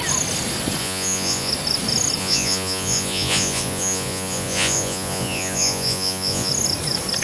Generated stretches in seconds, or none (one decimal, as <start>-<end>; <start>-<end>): 0.8-1.5; 2.2-6.5